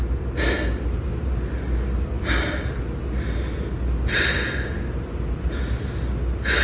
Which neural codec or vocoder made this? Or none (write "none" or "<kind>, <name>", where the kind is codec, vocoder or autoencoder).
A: none